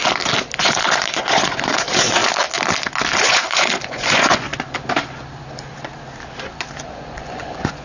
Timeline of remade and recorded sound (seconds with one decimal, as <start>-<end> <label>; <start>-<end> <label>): 0.0-0.6 recorded; 0.6-2.2 remade; 2.2-3.2 recorded; 3.2-4.5 remade; 4.5-6.8 recorded; 6.8-7.8 remade